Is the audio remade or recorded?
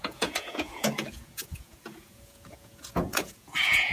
remade